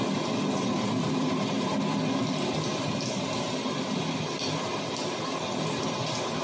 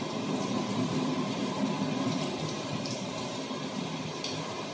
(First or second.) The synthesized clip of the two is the second